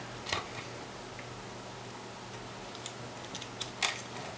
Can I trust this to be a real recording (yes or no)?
yes